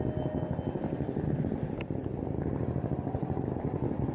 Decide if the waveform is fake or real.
real